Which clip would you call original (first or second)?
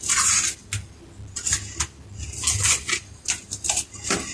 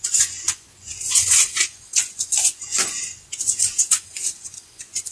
first